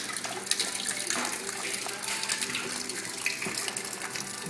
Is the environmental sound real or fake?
real